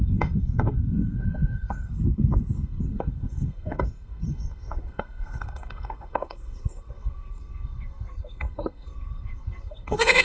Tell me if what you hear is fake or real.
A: fake